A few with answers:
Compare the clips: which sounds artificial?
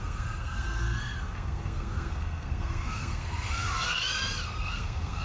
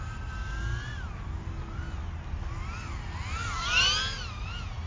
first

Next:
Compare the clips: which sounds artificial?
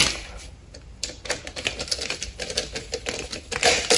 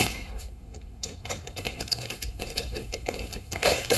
second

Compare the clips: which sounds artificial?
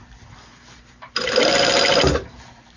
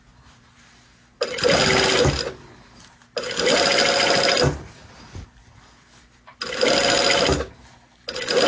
first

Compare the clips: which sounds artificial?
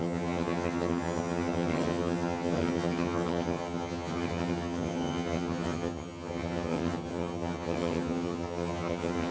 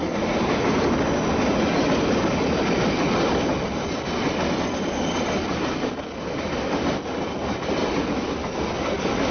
first